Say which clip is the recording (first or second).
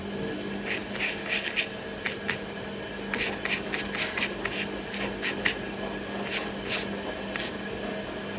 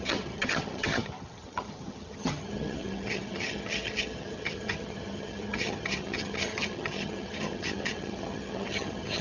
first